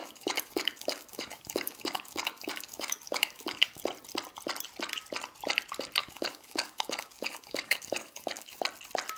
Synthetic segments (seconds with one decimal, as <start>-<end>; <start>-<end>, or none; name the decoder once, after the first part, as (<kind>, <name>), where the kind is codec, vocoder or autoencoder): 0.0-3.8 (codec, DAC); 6.0-8.6